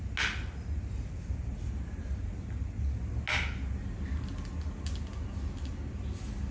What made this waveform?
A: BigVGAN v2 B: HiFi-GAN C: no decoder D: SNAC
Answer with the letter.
C